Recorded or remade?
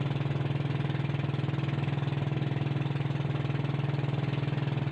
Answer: recorded